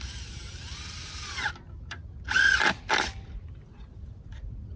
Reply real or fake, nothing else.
real